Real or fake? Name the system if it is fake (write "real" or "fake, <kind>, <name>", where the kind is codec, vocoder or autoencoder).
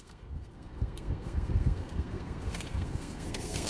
fake, codec, SNAC